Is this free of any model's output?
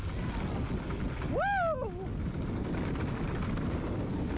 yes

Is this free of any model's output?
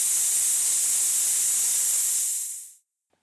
yes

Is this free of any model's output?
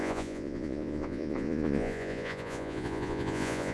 no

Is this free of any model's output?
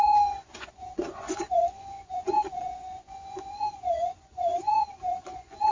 no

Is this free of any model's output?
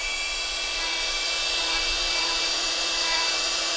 no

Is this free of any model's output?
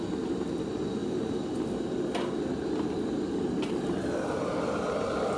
yes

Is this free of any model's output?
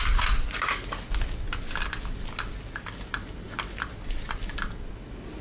yes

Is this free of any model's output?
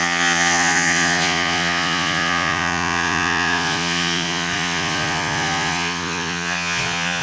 no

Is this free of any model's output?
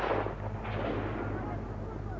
yes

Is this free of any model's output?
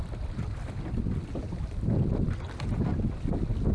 yes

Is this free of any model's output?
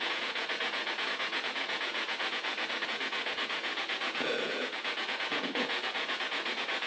no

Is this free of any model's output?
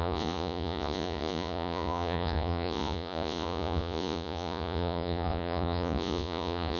no